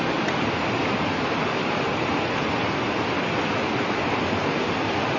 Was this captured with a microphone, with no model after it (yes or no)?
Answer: yes